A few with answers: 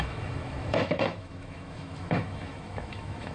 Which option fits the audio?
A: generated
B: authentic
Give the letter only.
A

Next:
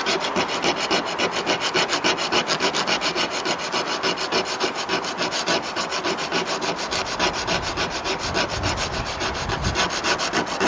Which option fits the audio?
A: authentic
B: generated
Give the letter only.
A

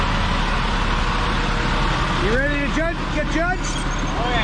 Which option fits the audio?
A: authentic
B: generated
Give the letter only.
A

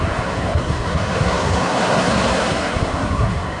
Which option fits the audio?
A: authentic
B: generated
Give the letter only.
B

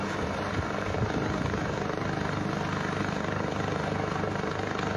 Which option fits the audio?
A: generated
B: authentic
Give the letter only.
B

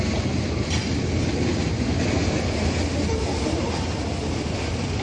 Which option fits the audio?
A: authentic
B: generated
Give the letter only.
A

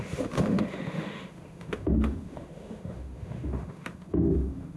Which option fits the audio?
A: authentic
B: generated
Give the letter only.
B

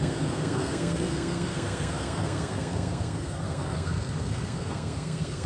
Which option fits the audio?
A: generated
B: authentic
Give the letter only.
A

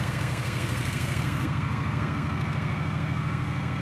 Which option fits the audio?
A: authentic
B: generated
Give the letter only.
B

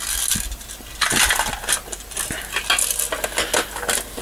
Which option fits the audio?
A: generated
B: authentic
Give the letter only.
B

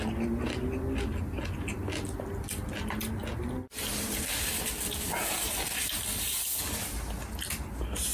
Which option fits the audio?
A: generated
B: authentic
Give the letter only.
B